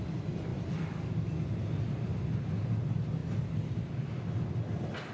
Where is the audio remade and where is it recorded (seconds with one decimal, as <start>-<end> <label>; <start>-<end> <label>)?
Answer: 0.0-5.1 recorded